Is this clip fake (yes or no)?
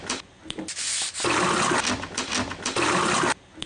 no